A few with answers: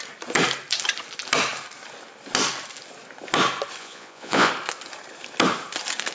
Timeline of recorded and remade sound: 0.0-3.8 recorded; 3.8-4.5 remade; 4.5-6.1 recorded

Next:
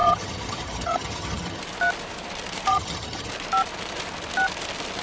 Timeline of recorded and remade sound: 0.0-1.6 remade; 1.6-2.7 recorded; 2.7-3.3 remade; 3.3-5.0 recorded